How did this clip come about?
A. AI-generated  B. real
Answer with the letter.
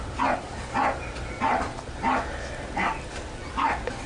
B